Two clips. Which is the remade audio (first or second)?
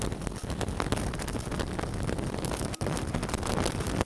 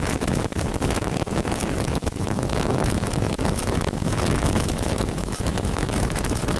second